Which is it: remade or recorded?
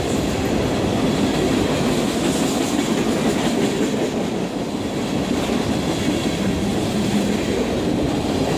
recorded